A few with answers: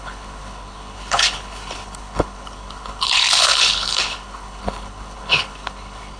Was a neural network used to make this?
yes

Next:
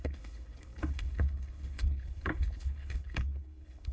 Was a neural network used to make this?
yes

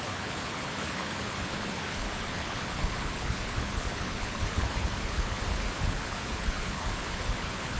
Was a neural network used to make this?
yes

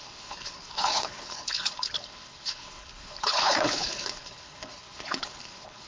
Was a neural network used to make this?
yes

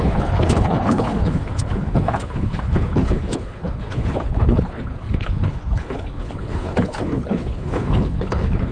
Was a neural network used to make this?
yes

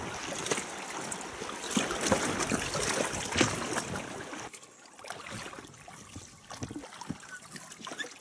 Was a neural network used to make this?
no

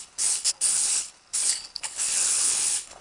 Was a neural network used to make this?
yes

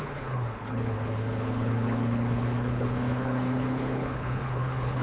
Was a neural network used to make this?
yes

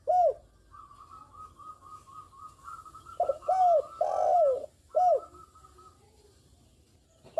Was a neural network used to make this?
no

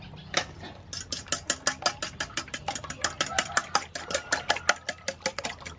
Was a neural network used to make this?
no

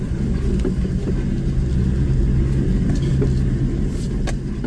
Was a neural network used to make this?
no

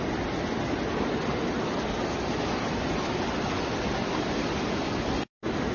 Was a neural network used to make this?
no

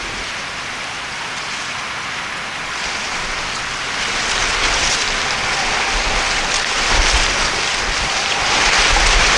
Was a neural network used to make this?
no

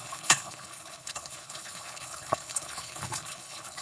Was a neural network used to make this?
yes